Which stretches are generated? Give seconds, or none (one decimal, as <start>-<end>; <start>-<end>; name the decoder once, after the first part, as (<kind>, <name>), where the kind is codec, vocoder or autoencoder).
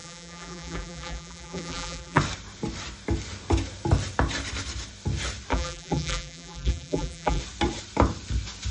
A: 0.0-2.2 (vocoder, BigVGAN v2); 5.5-7.4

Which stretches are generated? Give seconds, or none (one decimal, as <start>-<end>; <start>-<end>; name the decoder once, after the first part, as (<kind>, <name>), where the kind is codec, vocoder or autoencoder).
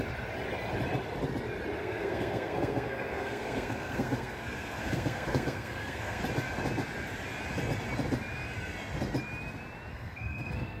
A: 1.8-6.2 (codec, SNAC); 9.9-10.8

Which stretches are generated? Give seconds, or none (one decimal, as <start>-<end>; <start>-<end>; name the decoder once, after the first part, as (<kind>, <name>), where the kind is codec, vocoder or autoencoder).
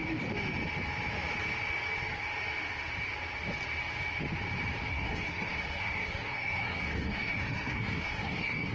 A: 4.9-8.7 (codec, SNAC)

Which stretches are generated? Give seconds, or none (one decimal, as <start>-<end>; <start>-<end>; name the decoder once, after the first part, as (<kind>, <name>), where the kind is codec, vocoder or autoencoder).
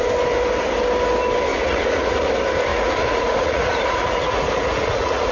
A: 1.5-2.3 (vocoder, Vocos); 2.7-5.3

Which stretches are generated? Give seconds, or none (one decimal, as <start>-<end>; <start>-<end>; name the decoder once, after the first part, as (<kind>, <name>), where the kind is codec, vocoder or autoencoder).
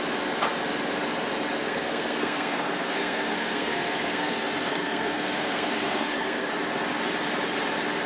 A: 1.6-6.5 (codec, SNAC)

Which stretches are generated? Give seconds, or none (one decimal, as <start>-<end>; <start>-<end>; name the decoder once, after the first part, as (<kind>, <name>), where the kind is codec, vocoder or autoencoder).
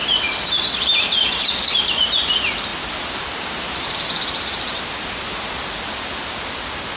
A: 2.7-5.8 (vocoder, BigVGAN v2)